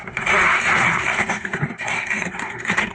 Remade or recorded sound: remade